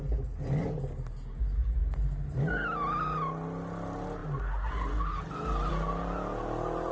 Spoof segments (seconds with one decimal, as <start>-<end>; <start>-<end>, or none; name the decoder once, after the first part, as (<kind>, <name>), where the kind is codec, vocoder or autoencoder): none